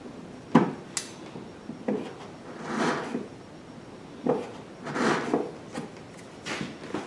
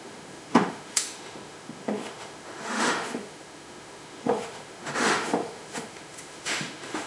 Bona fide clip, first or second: first